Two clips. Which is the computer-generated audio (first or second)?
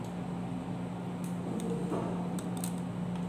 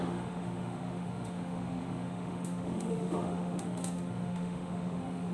second